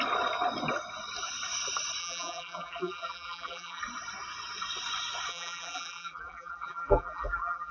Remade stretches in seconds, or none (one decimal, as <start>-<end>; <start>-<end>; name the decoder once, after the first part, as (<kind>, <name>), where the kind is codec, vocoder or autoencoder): 2.0-3.8 (vocoder, BigVGAN v2); 5.3-7.7